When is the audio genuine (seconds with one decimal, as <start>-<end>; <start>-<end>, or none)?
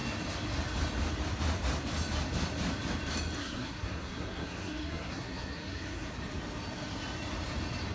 0.0-3.4; 6.1-7.9